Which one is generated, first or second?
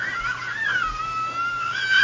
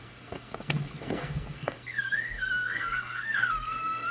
second